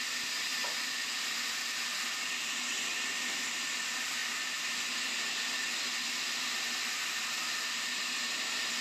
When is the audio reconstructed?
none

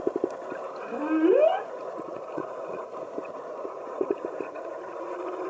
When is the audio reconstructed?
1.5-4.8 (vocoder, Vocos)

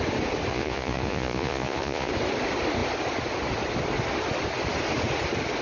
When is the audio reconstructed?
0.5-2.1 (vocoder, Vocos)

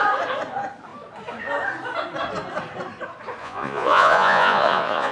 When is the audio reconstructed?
3.4-5.1 (vocoder, Vocos)

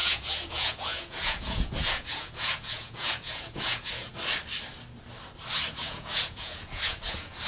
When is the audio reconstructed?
0.0-4.1 (vocoder, Vocos); 5.7-7.5

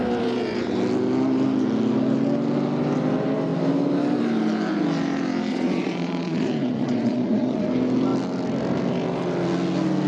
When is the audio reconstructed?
5.5-7.7 (vocoder, Vocos)

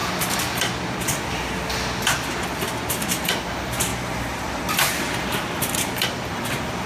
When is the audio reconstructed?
none

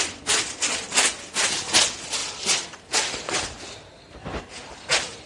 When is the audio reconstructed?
none